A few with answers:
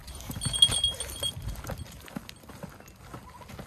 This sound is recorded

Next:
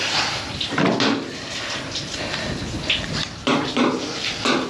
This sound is recorded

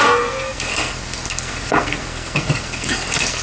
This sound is remade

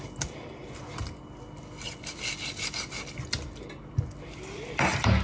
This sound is recorded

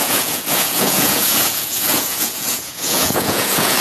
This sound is remade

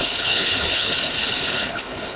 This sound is remade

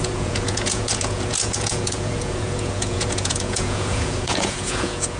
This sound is remade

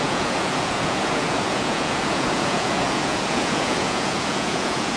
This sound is remade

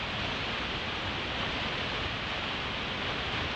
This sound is recorded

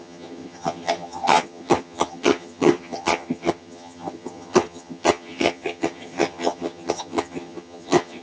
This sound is remade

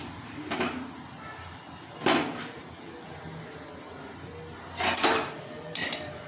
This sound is recorded